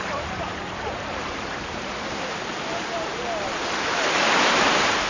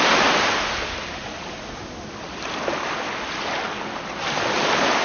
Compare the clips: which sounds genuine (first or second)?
second